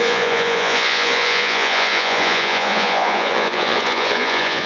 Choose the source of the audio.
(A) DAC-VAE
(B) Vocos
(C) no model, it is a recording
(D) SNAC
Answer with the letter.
B